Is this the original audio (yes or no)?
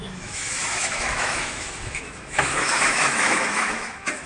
no